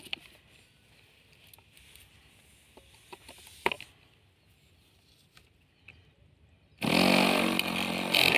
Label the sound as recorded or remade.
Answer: recorded